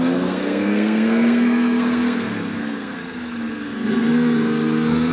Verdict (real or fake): fake